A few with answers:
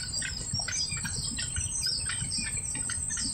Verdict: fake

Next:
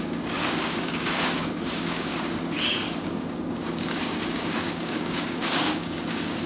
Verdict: fake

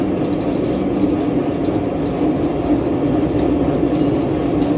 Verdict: real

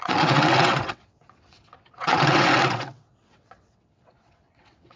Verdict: fake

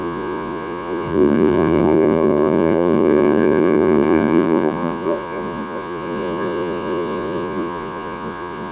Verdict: fake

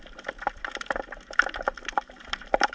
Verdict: fake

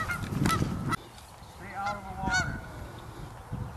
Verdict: real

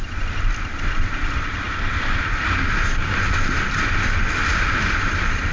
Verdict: real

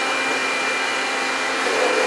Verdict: real